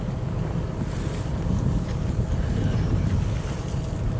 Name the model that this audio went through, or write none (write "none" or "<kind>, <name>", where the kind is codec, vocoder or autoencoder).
none